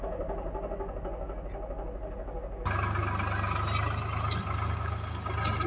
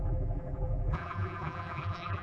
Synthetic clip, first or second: second